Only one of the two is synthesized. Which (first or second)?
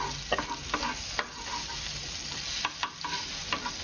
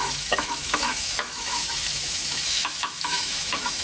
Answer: second